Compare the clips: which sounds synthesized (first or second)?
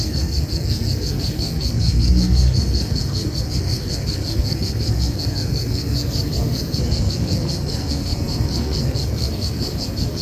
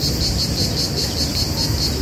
first